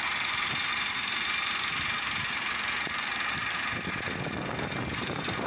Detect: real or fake fake